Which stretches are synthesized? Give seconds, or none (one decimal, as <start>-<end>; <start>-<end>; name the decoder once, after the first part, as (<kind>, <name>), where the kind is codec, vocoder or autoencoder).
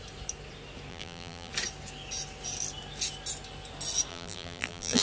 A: 0.9-1.5 (vocoder, BigVGAN v2); 4.1-5.0